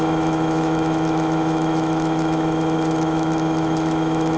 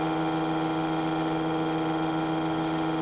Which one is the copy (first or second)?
first